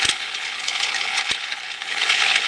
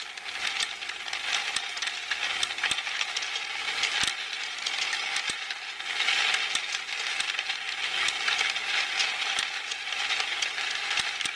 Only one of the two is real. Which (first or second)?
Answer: second